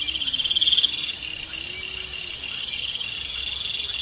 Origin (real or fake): real